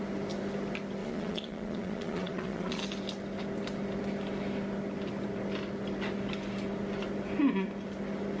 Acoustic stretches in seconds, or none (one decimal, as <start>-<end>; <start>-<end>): 0.0-1.0; 2.8-8.4